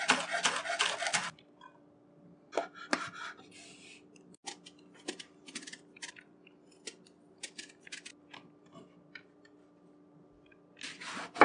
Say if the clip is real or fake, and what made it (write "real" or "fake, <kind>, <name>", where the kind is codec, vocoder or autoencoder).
real